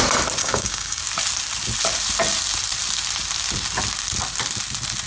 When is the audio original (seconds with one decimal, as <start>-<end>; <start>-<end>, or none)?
0.0-0.4; 1.0-5.1